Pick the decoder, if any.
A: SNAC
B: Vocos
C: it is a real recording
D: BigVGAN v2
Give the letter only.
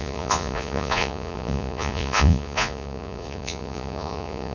B